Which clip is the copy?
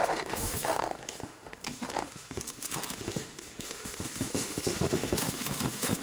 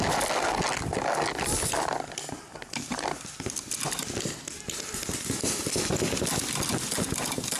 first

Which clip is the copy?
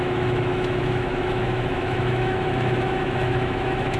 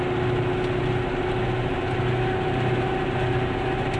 first